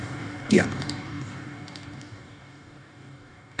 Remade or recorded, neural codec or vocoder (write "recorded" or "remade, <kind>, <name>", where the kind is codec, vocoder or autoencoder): remade, codec, DAC